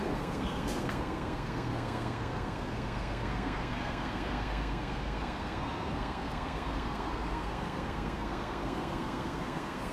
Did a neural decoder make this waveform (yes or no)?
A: yes